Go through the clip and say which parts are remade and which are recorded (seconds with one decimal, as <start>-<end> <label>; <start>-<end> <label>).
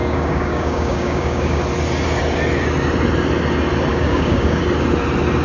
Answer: 0.0-1.6 remade; 1.6-3.9 recorded; 3.9-4.6 remade; 4.6-5.4 recorded